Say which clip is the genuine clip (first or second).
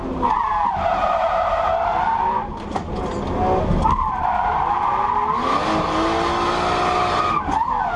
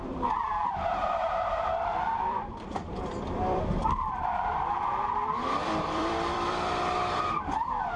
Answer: first